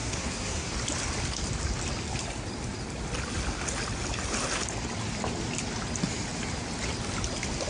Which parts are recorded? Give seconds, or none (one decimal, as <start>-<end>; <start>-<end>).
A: 0.7-7.7